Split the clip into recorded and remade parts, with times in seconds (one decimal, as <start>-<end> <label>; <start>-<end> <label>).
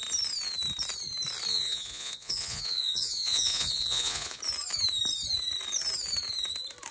0.0-1.5 recorded; 1.5-4.4 remade; 4.4-6.9 recorded